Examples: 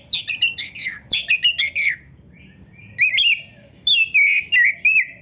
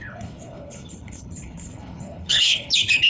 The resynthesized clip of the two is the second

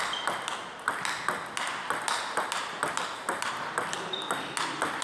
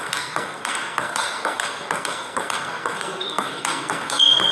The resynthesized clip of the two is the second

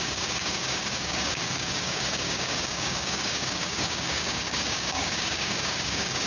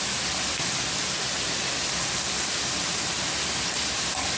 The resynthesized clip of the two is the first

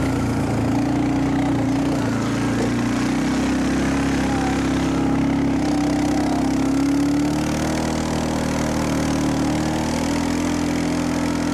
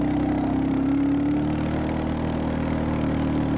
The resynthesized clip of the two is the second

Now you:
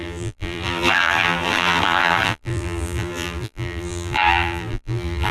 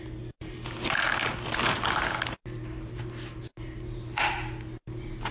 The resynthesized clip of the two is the first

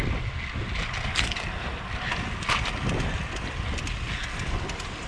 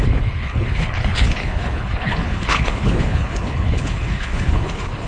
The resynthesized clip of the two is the second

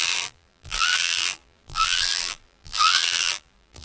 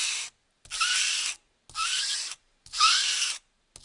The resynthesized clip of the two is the first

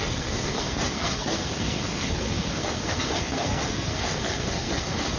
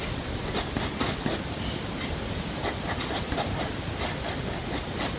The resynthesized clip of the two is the first